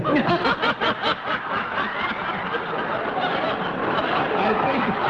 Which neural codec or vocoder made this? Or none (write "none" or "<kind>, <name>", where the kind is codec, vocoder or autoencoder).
vocoder, BigVGAN v2